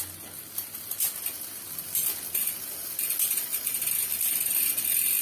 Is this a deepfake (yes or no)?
no